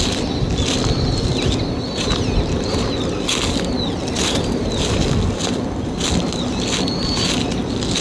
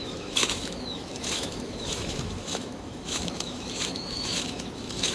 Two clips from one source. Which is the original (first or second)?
first